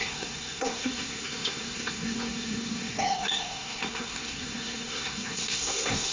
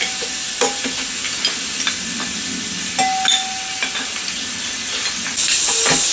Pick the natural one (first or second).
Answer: second